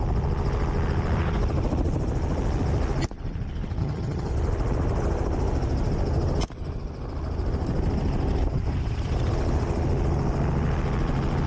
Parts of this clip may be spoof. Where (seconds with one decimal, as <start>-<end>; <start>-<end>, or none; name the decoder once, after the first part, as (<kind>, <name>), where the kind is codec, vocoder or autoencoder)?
3.8-4.3 (vocoder, HiFi-GAN)